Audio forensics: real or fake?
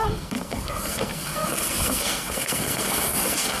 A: fake